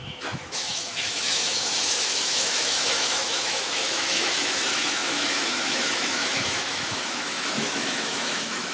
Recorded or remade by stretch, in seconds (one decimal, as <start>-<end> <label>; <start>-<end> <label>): 0.0-8.7 remade